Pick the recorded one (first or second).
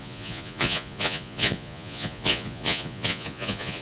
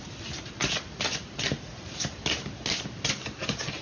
second